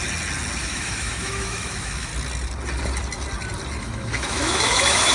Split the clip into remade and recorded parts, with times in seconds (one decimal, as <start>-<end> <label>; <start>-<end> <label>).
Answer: 0.0-0.6 recorded; 0.6-2.1 remade; 2.1-3.8 recorded; 3.8-5.1 remade